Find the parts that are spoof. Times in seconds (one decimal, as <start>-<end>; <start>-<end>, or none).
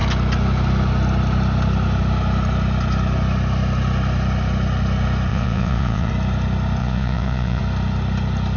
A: 5.3-6.1; 6.8-7.6